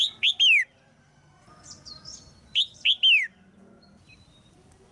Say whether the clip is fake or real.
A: real